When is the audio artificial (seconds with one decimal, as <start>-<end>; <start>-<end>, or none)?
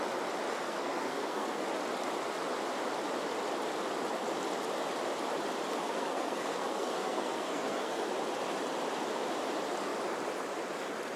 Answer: 0.5-1.6; 5.8-8.1